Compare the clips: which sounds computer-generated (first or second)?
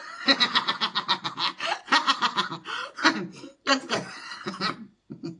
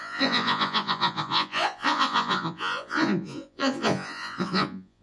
second